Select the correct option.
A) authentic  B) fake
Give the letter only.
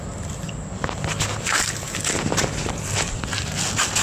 A